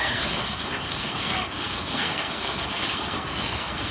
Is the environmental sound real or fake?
fake